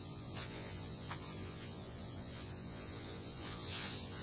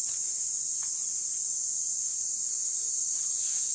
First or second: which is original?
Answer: second